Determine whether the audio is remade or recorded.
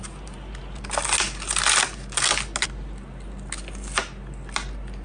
recorded